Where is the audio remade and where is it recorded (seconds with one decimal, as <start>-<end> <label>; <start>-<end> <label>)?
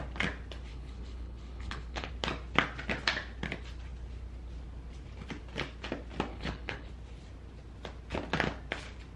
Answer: 0.0-0.7 recorded; 0.7-2.1 remade; 2.1-6.3 recorded; 6.3-6.9 remade; 6.9-9.2 recorded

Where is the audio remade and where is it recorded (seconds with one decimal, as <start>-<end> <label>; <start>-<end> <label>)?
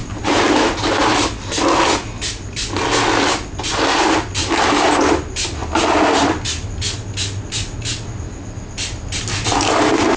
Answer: 0.0-10.2 recorded